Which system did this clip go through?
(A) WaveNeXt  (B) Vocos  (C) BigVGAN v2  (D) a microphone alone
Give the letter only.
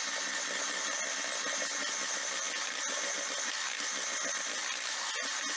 D